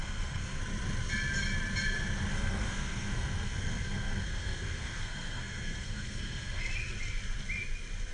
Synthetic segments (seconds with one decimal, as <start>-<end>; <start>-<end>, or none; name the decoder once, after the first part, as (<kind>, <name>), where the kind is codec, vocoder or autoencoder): 0.0-0.6 (codec, SNAC); 2.3-6.6